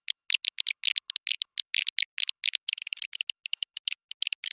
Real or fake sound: real